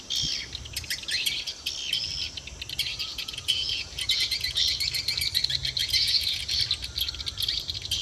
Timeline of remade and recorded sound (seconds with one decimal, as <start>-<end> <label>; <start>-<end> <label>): 0.0-3.1 recorded; 3.1-4.6 remade; 4.6-5.8 recorded; 5.8-6.4 remade; 6.4-8.0 recorded